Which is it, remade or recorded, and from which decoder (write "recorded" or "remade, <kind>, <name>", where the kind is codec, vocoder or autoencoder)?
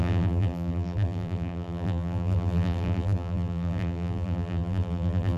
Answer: remade, vocoder, BigVGAN v2